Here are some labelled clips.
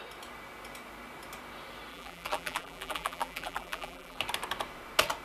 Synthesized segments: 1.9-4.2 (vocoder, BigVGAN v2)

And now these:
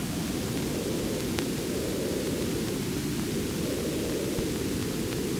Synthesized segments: 2.1-3.0 (vocoder, BigVGAN v2); 4.8-5.4

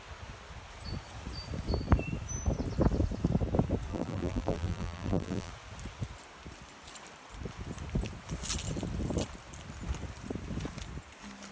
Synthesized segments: 3.9-5.5 (vocoder, BigVGAN v2)

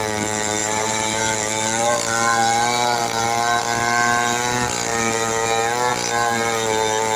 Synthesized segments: 0.6-1.2 (vocoder, BigVGAN v2)

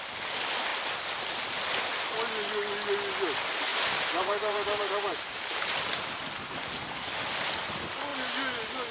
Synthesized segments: 3.7-6.5 (vocoder, BigVGAN v2)